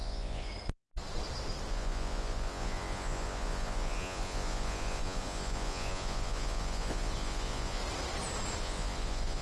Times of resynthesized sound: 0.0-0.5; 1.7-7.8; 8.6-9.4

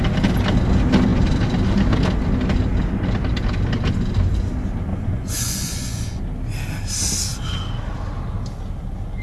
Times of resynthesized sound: 4.9-6.2